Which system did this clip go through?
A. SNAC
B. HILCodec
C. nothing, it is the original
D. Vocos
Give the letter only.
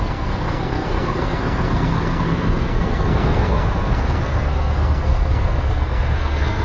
A